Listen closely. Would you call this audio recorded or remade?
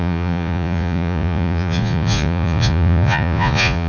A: remade